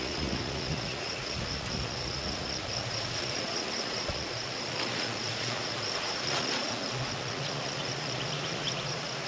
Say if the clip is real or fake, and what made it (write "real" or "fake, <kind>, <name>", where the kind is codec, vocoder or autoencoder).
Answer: fake, vocoder, Vocos